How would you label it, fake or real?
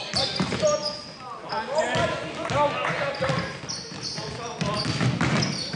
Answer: real